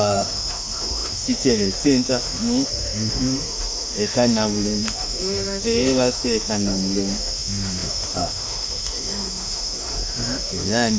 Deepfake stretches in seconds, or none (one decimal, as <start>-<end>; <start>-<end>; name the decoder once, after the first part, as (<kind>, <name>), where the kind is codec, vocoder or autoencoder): 0.0-11.0 (autoencoder, DAC-VAE)